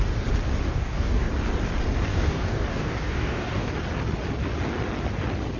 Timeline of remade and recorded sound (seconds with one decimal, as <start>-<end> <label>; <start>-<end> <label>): 0.0-0.7 recorded; 0.7-1.3 remade; 1.3-2.1 recorded; 2.1-3.7 remade; 3.7-5.6 recorded